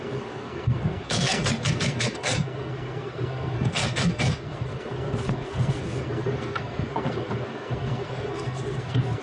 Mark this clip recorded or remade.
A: remade